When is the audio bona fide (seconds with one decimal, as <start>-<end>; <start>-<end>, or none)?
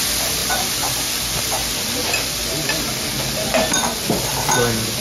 0.0-5.0